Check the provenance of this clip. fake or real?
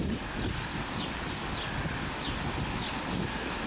real